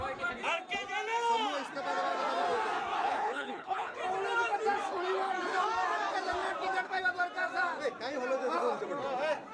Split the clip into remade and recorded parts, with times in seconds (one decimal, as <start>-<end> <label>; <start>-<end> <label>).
0.0-3.0 recorded; 3.0-4.0 remade; 4.0-9.5 recorded